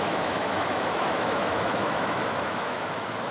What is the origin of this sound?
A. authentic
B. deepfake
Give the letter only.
B